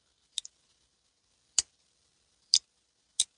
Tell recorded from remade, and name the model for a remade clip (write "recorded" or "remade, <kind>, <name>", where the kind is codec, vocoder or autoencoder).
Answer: recorded